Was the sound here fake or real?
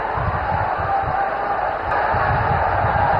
real